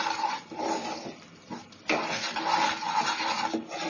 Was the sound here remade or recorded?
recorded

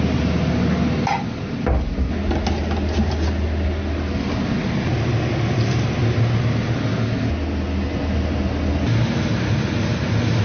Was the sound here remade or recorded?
recorded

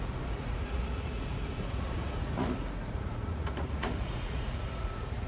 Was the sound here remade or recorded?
remade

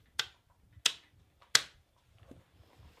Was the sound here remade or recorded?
recorded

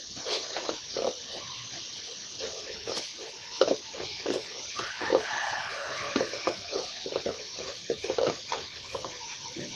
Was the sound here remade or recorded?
remade